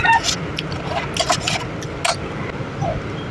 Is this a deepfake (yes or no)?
no